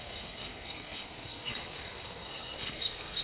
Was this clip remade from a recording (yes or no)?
yes